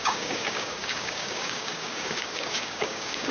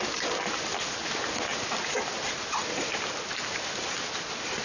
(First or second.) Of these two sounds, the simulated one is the first